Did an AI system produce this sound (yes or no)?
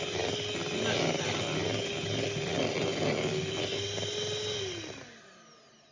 no